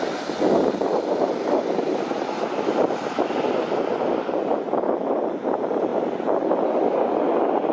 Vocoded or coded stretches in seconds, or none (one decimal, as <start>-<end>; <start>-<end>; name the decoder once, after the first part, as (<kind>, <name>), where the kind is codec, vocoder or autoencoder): none